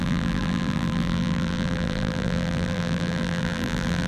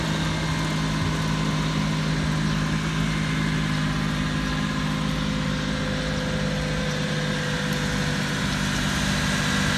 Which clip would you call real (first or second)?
second